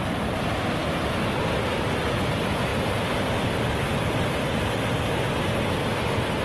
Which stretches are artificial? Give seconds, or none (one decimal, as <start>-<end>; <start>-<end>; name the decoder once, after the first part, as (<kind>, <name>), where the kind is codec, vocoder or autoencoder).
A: none

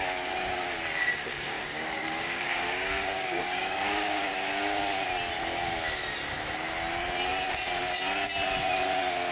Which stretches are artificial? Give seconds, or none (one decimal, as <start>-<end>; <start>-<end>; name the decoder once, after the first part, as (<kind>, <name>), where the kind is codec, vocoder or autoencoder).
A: 1.3-4.3 (codec, DAC)

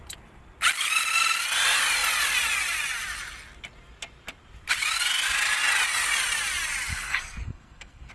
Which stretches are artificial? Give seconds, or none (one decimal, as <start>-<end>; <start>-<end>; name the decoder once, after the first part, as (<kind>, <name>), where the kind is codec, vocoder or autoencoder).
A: 6.9-8.1 (codec, SNAC)

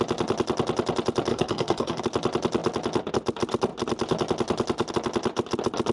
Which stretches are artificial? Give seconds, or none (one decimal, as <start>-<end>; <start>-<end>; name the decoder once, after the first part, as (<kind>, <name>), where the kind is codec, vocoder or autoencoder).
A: 1.3-2.0 (codec, SNAC)

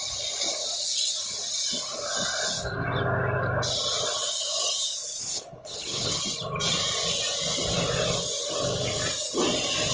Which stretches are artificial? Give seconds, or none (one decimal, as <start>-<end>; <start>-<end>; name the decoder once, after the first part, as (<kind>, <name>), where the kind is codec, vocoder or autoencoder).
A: 5.2-6.2 (codec, HILCodec)